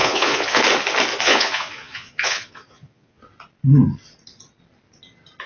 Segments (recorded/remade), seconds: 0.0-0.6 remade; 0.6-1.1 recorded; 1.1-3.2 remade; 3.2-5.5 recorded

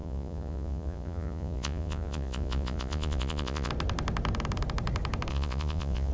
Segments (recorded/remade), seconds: 0.0-3.7 remade; 3.7-5.3 recorded; 5.3-6.1 remade

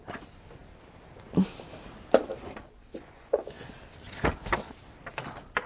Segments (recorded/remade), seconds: 0.0-2.9 recorded; 2.9-3.7 remade; 3.7-5.7 recorded

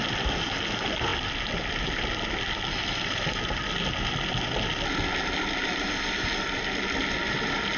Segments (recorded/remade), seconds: 0.0-7.8 recorded